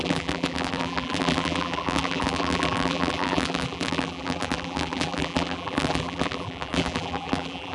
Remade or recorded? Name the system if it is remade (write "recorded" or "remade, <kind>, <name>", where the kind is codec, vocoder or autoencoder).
remade, vocoder, BigVGAN v2